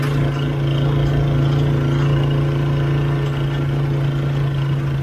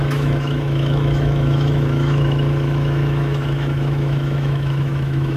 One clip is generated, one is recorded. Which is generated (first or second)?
second